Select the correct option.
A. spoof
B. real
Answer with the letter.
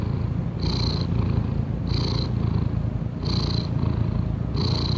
B